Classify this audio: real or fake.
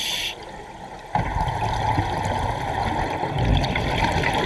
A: real